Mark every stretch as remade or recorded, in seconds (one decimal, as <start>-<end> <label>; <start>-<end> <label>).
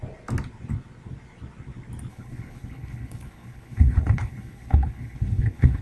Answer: 0.0-2.1 recorded; 2.1-5.8 remade